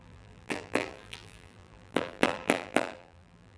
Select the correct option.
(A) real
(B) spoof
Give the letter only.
B